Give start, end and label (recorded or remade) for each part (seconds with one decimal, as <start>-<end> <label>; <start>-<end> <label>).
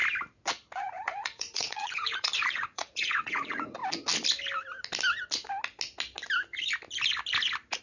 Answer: 0.0-0.8 recorded; 0.8-3.8 remade; 3.8-7.8 recorded